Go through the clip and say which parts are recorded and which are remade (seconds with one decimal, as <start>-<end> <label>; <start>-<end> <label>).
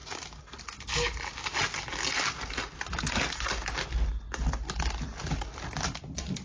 0.0-6.4 recorded